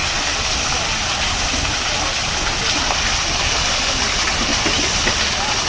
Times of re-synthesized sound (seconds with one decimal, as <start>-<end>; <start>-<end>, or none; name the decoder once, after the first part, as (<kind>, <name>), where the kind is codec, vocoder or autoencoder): none

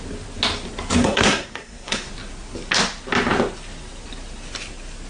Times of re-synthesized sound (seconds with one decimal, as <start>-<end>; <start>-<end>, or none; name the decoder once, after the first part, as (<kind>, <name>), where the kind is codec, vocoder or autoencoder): 1.0-2.1 (codec, SNAC)

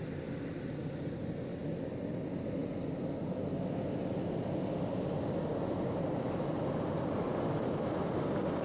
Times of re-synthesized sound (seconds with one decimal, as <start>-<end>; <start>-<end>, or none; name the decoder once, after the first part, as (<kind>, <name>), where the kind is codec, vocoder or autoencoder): none

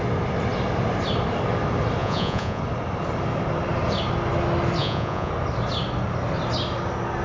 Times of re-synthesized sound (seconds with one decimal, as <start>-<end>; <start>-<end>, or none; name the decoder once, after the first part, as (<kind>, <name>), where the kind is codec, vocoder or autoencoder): 2.0-2.6 (vocoder, Vocos); 4.8-5.3

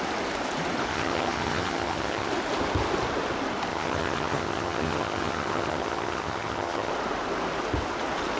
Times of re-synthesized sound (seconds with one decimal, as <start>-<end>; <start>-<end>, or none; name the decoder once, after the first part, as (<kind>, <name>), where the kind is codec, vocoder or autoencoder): 0.9-2.3 (vocoder, HiFi-GAN); 3.7-6.9